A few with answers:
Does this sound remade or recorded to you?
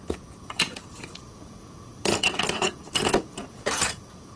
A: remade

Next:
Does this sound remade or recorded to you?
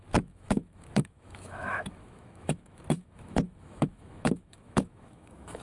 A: remade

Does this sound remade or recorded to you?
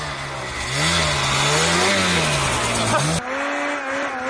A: recorded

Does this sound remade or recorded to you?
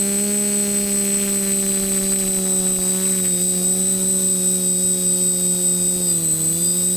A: recorded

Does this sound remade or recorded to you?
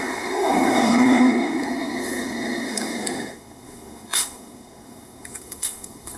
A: remade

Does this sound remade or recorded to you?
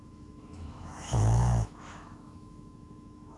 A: remade